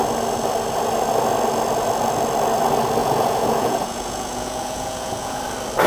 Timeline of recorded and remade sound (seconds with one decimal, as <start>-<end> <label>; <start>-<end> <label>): 0.0-3.0 recorded; 3.0-5.4 remade; 5.4-5.9 recorded